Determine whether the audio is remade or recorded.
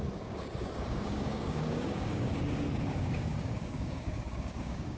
remade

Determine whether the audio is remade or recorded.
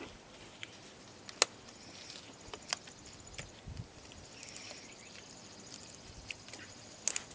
recorded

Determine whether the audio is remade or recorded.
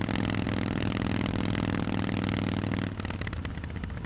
recorded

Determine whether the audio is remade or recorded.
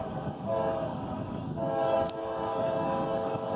remade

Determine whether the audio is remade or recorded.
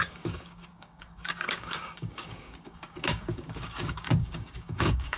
remade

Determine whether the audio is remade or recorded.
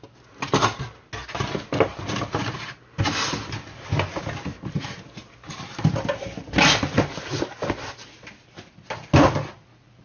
recorded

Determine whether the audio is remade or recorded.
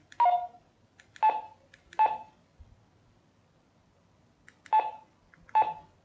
recorded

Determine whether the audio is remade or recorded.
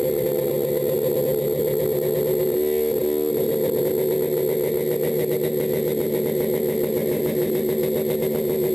recorded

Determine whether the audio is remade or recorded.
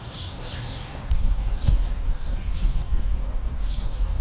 remade